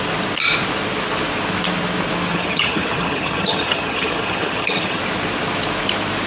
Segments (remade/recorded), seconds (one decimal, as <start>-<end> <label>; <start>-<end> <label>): 0.0-2.3 recorded; 2.3-5.0 remade; 5.0-6.3 recorded